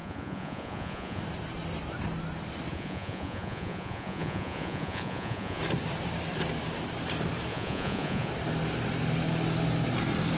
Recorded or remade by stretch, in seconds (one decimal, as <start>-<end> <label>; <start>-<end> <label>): 0.0-1.2 remade; 1.2-2.7 recorded; 2.7-5.6 remade; 5.6-7.5 recorded; 7.5-8.3 remade; 8.3-10.4 recorded